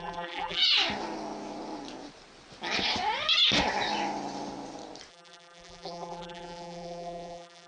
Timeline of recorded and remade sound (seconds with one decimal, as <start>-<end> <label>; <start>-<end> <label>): 0.0-0.6 remade; 0.6-5.1 recorded; 5.1-7.7 remade